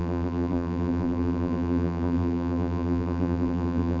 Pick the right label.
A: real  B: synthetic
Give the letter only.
B